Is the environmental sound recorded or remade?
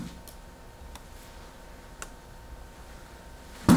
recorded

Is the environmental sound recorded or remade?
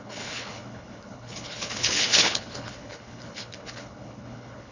remade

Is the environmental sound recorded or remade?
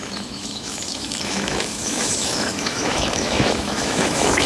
remade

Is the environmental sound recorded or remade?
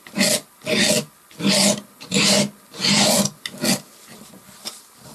recorded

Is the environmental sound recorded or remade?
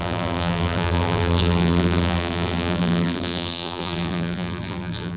remade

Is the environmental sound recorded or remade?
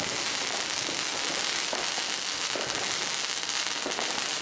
recorded